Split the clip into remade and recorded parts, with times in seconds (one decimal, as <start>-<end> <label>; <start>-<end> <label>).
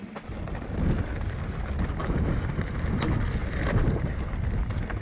0.0-2.0 recorded; 2.0-2.7 remade; 2.7-3.4 recorded; 3.4-4.3 remade; 4.3-5.0 recorded